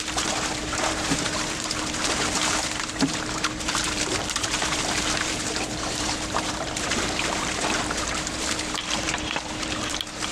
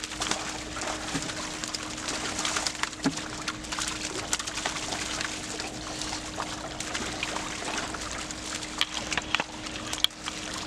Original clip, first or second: second